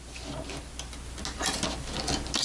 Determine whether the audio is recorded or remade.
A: recorded